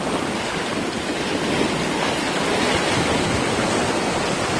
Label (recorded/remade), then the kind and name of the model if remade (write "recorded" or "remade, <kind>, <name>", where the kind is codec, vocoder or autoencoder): recorded